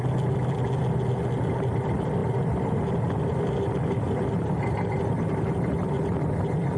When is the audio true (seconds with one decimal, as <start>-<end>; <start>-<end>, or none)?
0.0-6.8